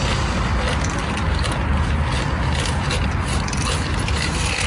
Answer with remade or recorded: recorded